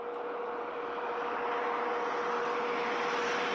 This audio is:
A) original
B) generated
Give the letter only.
A